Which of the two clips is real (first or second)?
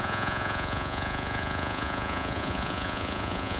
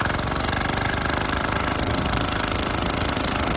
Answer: second